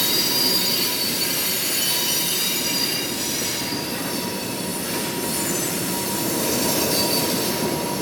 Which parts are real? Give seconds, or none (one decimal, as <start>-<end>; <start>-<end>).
4.7-5.5